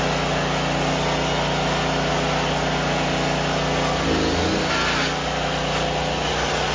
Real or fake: real